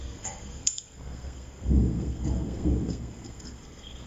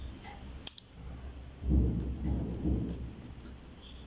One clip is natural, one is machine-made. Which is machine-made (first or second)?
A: first